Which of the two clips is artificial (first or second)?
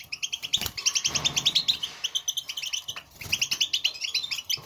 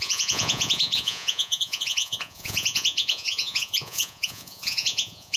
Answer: second